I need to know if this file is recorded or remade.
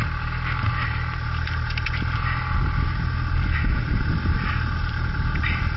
recorded